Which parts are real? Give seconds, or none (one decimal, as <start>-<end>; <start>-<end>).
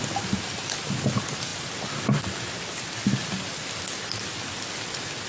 0.0-5.3